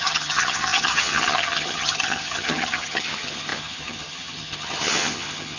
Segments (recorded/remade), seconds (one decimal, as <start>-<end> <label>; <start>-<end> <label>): 0.0-5.6 remade